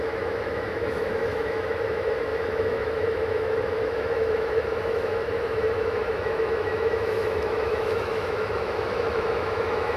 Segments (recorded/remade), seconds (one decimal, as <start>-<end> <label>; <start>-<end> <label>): 0.0-10.0 remade